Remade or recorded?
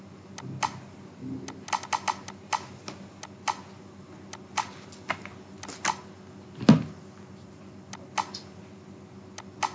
recorded